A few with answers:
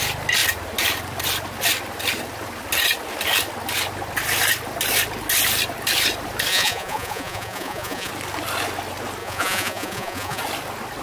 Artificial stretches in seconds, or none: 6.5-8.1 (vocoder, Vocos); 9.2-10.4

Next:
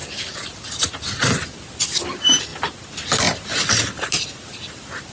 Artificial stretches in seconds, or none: none

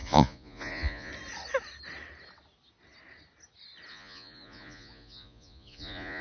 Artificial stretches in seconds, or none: 0.0-1.1 (vocoder, Vocos); 3.9-6.2

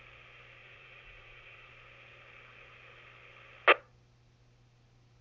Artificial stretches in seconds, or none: 0.6-1.7 (vocoder, Vocos)